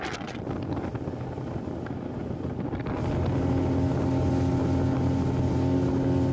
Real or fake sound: real